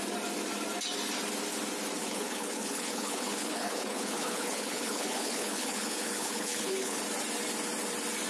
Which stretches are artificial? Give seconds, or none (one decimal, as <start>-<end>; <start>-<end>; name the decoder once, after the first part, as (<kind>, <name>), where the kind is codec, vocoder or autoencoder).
2.0-7.0 (codec, HILCodec)